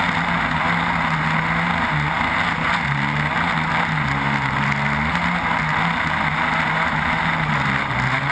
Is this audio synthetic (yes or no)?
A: no